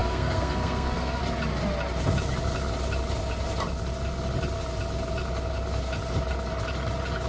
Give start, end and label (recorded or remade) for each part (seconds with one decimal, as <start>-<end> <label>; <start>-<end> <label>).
0.0-1.2 remade; 1.2-7.3 recorded